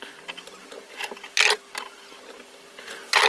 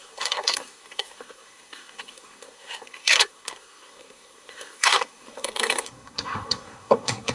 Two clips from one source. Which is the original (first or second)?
first